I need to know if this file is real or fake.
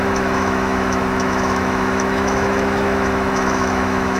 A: fake